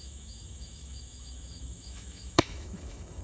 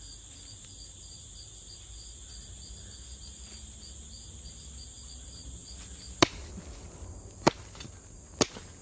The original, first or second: second